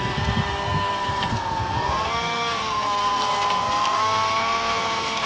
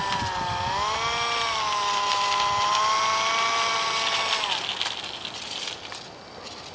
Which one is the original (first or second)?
second